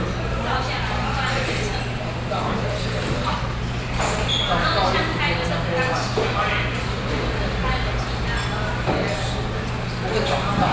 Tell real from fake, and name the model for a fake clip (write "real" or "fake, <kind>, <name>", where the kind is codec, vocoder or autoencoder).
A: real